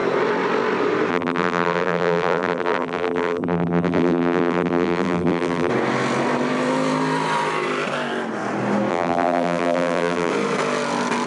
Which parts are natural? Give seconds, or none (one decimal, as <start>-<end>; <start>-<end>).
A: 0.0-1.1; 5.7-8.9; 10.3-11.3

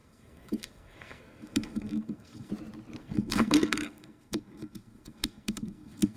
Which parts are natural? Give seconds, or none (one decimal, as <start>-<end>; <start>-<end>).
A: 2.5-3.0

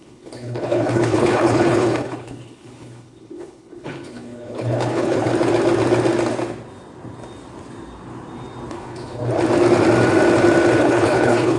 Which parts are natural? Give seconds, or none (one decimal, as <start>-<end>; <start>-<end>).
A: 5.3-8.7; 9.2-10.8